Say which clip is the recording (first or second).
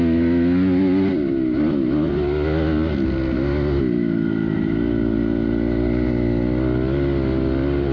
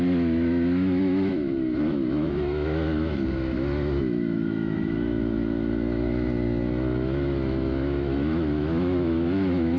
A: first